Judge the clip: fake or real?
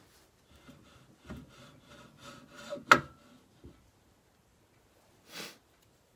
real